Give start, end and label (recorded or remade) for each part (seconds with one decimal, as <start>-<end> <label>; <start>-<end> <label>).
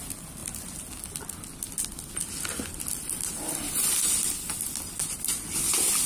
0.0-6.1 recorded